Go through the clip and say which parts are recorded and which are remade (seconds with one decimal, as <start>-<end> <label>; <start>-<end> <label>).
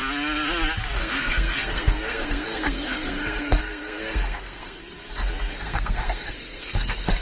0.0-1.0 recorded; 1.0-4.8 remade; 4.8-5.5 recorded; 5.5-7.2 remade